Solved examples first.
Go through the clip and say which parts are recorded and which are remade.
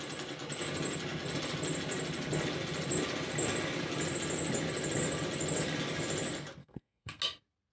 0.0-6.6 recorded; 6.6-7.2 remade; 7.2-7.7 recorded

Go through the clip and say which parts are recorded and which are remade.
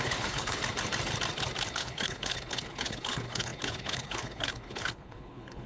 0.0-0.6 remade; 0.6-1.7 recorded; 1.7-5.7 remade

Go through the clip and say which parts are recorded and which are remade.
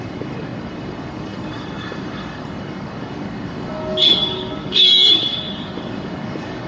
0.0-6.7 remade